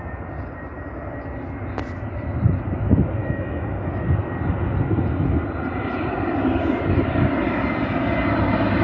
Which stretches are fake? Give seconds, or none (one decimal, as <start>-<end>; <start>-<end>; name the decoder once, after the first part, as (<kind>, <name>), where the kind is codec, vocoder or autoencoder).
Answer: 3.2-3.9 (autoencoder, DAC-VAE)